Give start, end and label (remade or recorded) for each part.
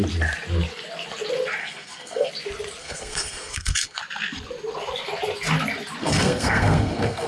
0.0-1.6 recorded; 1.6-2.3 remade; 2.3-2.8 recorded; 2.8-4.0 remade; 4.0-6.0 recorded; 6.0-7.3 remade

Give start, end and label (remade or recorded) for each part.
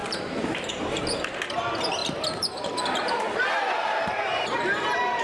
0.0-1.0 remade; 1.0-2.0 recorded; 2.0-5.2 remade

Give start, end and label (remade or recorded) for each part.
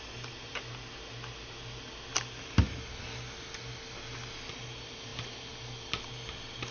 0.0-6.7 recorded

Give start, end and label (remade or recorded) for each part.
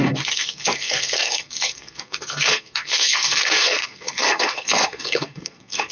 0.0-5.9 remade